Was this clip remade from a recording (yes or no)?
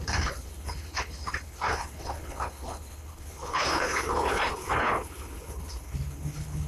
yes